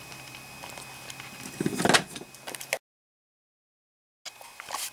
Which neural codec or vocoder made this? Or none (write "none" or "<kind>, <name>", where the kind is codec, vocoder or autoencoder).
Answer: none